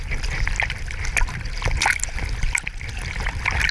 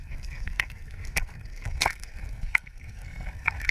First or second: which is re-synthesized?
second